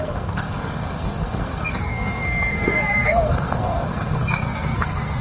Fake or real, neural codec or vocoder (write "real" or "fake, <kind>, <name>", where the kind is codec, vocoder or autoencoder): fake, codec, SNAC